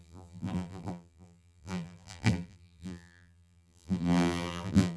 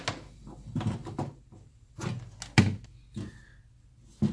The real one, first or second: second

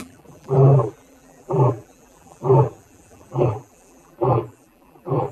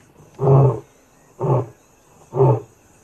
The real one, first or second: second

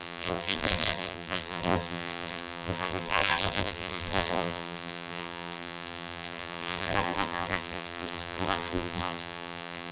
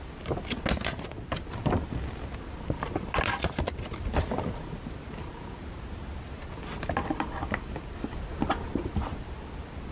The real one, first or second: second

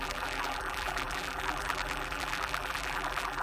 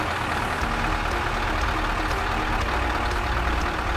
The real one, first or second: second